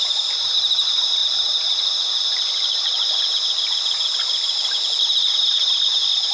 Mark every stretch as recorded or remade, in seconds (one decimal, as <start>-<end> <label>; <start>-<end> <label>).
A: 0.0-6.3 recorded

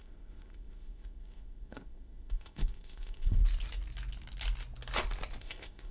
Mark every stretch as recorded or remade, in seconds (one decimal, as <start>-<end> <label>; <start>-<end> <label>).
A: 0.0-3.4 remade; 3.4-5.4 recorded; 5.4-5.9 remade

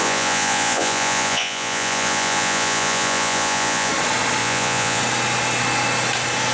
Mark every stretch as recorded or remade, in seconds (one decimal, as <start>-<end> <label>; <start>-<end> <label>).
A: 0.0-3.9 remade; 3.9-4.4 recorded; 4.4-5.0 remade; 5.0-6.5 recorded

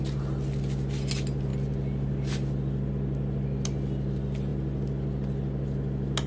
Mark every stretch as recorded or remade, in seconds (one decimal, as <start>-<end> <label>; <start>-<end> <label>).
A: 0.0-6.3 recorded